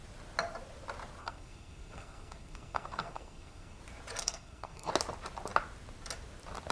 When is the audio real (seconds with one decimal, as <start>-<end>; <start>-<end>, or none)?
0.0-1.2; 3.8-4.2; 4.9-6.7